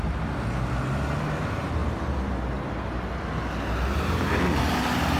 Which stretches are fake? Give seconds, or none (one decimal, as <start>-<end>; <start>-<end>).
none